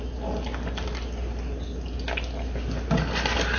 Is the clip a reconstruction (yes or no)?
no